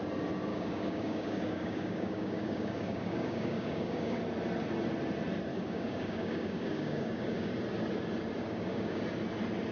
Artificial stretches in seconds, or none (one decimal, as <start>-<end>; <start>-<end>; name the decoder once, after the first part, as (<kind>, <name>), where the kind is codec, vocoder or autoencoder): 0.5-4.2 (codec, DAC); 5.5-7.5; 8.4-9.0

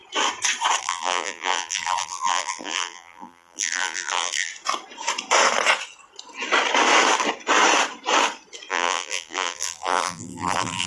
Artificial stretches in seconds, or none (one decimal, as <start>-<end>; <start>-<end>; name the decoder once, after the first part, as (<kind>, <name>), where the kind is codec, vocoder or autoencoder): 0.8-4.5 (vocoder, BigVGAN v2); 8.7-10.9

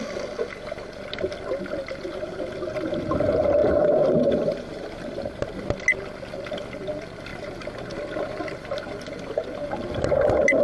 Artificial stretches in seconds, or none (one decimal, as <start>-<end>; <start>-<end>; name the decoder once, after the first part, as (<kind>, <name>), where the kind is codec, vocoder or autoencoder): 3.6-5.6 (vocoder, BigVGAN v2); 7.3-8.4